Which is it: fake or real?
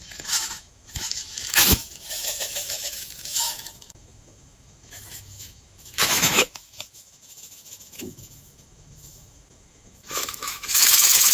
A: fake